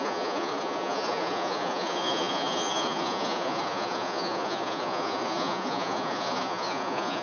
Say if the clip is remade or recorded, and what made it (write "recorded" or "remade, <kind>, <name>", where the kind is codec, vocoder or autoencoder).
remade, vocoder, Vocos